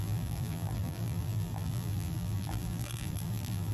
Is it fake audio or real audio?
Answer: fake